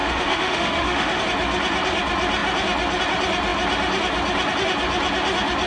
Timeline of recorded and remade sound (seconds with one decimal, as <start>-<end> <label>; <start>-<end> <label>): 0.0-1.2 remade; 1.2-5.7 recorded